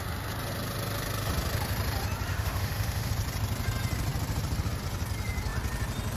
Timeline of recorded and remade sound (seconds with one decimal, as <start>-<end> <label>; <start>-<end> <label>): 0.0-2.3 recorded; 2.3-3.1 remade; 3.1-6.2 recorded